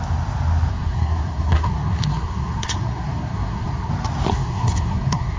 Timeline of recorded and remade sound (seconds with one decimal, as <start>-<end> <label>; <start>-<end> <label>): 0.0-0.7 recorded; 0.7-3.9 remade; 3.9-4.3 recorded; 4.3-5.4 remade